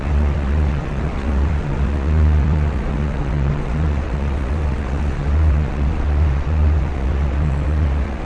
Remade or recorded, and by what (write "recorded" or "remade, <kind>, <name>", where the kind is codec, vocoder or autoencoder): remade, vocoder, WaveNeXt